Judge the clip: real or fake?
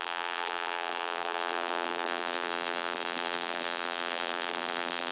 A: fake